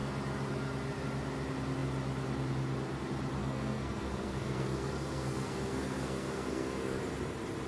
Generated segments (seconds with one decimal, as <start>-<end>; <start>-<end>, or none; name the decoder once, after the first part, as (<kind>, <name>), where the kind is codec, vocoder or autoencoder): 3.4-7.0 (codec, SNAC)